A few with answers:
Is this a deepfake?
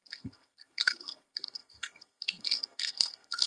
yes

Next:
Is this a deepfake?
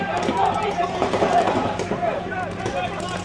yes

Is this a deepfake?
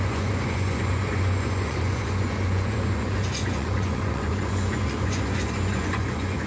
yes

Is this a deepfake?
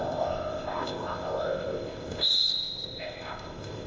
yes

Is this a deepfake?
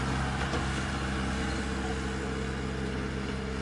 no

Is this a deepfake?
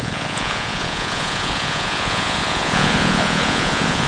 yes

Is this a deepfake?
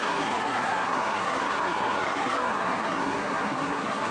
yes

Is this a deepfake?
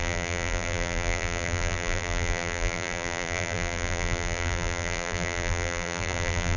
yes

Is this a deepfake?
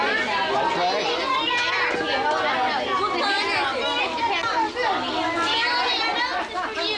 no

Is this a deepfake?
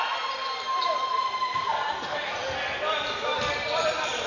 yes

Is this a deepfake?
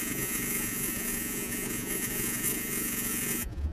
yes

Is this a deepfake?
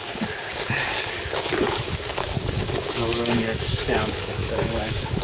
yes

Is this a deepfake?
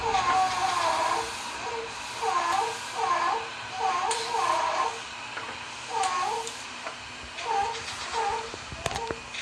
no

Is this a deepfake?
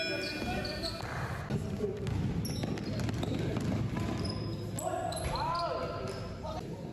no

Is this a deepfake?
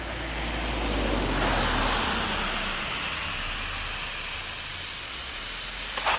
no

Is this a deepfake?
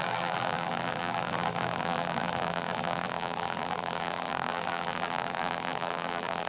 yes